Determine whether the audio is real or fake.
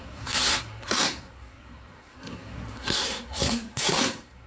fake